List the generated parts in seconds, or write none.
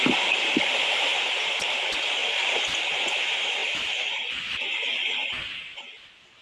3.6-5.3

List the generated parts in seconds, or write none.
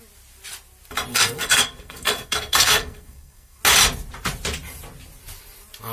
1.1-3.6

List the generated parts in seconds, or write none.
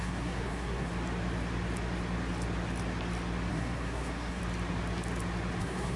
0.0-0.9; 3.5-4.4; 5.6-6.0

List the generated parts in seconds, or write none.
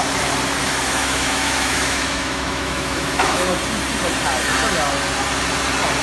0.6-3.5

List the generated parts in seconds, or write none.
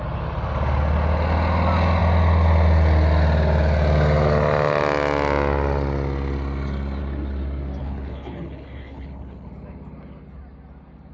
7.8-9.5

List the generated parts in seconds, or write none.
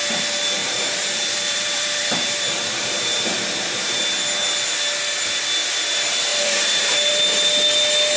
0.6-4.0; 6.3-7.1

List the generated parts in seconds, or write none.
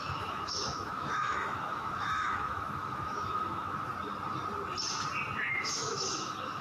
0.0-3.9; 5.5-6.6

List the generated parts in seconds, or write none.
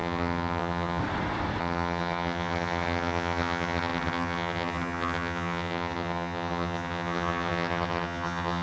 0.0-1.0; 1.6-8.6